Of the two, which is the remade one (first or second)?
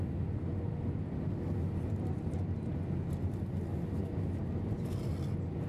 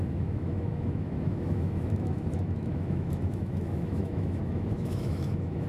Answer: second